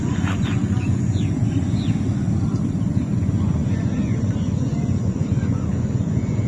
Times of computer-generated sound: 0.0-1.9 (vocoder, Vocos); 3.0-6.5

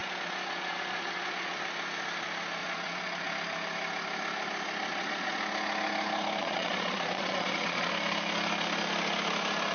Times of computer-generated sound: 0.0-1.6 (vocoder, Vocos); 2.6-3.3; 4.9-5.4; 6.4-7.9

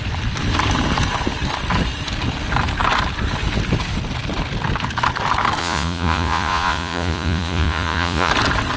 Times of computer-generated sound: 5.6-8.3 (vocoder, Vocos)